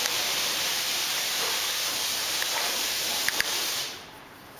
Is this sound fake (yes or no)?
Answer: yes